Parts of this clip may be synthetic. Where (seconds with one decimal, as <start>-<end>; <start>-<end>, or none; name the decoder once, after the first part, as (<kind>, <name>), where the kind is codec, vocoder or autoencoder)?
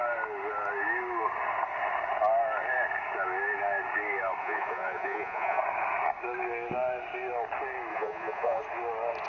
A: 4.4-5.6 (vocoder, Vocos); 7.9-8.6